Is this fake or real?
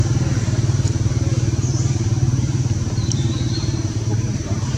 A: fake